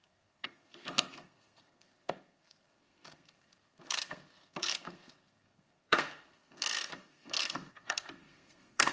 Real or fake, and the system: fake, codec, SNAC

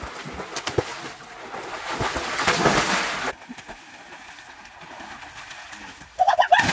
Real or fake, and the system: real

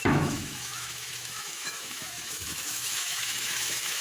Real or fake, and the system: fake, autoencoder, DAC-VAE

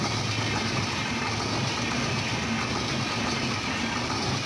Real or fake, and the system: real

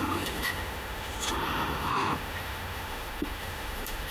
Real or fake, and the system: fake, autoencoder, DAC-VAE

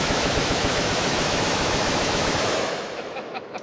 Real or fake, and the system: fake, autoencoder, DAC-VAE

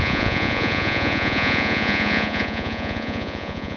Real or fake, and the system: fake, vocoder, Vocos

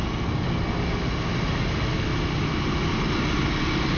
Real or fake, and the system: real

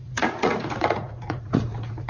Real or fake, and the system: fake, vocoder, Vocos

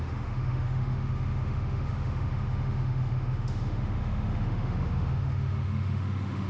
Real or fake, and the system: fake, autoencoder, DAC-VAE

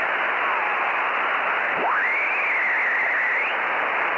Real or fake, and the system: real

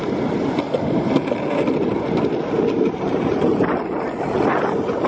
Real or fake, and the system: real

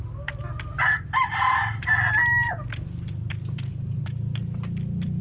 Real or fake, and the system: fake, vocoder, BigVGAN v2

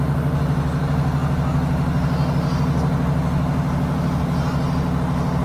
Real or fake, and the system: real